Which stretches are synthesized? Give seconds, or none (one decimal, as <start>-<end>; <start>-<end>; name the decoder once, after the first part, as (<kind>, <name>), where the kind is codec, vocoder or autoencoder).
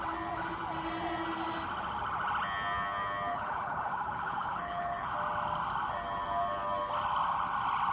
3.3-5.1 (codec, HILCodec)